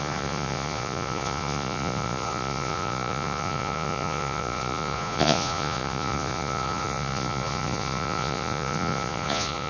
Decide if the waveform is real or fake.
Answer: fake